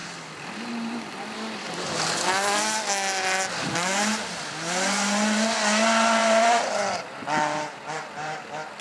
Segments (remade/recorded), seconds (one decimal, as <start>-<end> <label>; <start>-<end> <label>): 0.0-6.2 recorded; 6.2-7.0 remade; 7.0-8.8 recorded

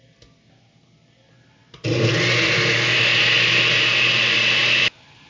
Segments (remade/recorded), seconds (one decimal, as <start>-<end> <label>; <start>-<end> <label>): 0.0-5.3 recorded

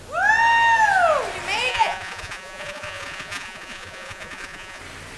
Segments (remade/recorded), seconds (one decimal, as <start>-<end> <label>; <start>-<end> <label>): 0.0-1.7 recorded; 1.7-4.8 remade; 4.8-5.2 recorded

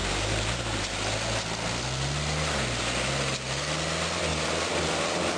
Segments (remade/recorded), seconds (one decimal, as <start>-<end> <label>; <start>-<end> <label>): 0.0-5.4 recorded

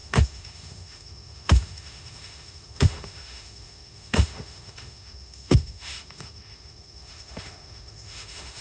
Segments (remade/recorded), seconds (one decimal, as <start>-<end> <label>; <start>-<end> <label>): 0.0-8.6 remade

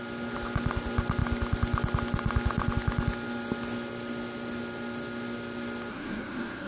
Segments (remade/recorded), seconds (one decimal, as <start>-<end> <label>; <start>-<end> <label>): 0.0-5.9 recorded; 5.9-6.7 remade